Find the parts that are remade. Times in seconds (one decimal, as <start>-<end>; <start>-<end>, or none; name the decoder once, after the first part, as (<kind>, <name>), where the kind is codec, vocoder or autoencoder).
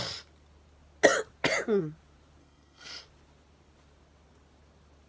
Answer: 2.4-3.0 (codec, SNAC)